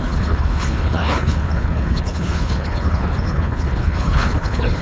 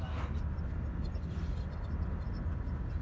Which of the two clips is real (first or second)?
second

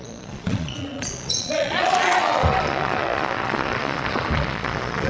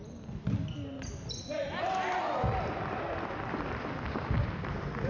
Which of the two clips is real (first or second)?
second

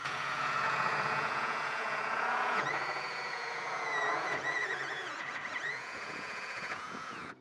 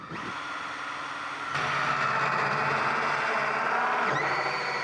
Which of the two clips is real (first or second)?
second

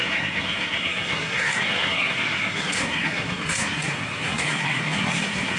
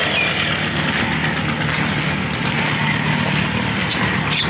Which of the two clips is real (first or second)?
second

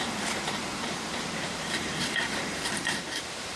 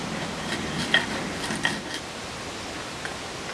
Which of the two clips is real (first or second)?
second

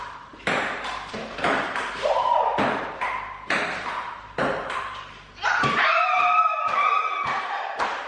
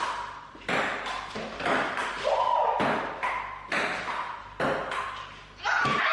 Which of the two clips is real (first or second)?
second